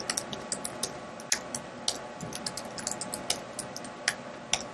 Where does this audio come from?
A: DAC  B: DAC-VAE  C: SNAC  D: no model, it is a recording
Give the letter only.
D